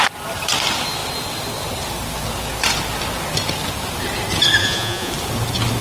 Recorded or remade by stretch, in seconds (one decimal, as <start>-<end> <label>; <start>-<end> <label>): 0.0-4.6 recorded; 4.6-5.1 remade; 5.1-5.8 recorded